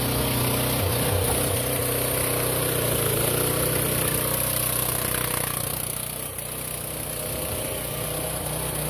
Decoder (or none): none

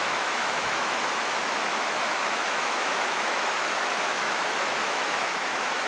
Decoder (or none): autoencoder, DAC-VAE